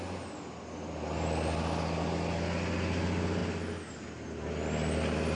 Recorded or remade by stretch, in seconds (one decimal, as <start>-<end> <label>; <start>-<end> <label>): 0.0-5.4 recorded